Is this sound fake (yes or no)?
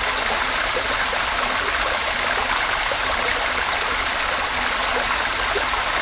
no